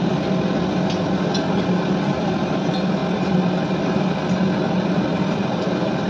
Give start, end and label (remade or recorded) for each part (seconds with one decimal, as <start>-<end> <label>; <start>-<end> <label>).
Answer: 0.0-6.1 recorded